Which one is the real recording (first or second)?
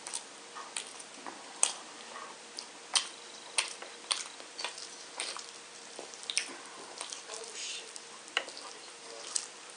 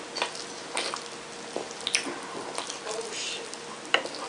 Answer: second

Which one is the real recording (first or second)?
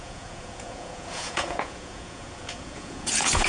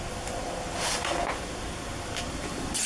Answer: second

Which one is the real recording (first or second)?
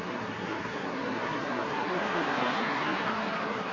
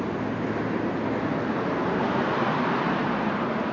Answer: second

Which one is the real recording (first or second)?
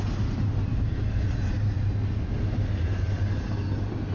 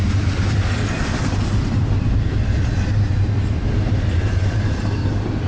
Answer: first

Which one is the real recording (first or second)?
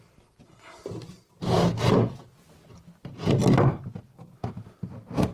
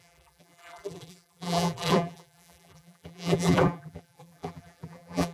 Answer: first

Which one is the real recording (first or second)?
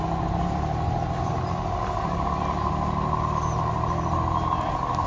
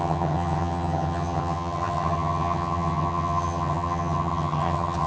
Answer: first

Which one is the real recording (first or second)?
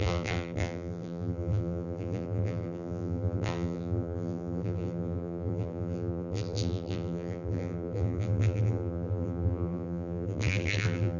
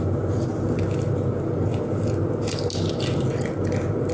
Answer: second